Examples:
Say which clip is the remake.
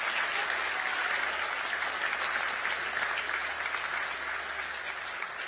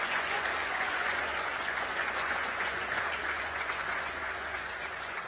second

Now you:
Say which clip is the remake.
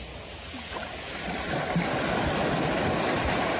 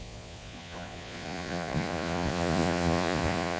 second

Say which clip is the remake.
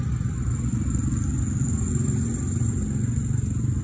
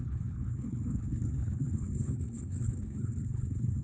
second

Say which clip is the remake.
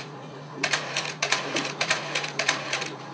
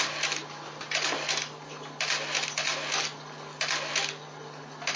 first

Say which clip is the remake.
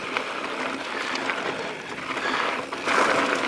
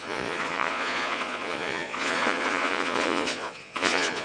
second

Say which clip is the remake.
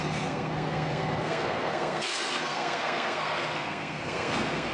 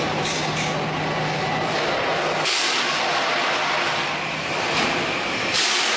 first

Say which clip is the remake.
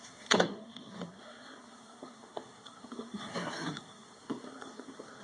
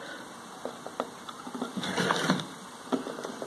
first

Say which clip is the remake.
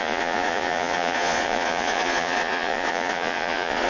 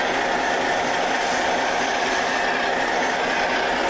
first